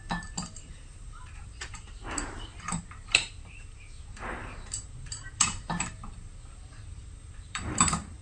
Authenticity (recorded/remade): remade